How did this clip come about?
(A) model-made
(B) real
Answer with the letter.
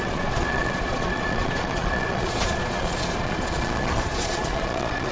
A